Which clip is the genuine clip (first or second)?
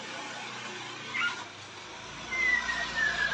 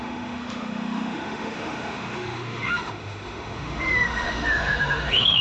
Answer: first